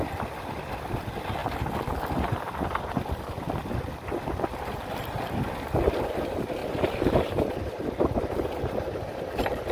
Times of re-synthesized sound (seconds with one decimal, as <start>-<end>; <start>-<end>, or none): 6.6-9.7